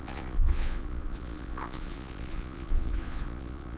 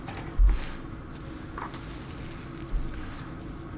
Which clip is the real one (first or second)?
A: second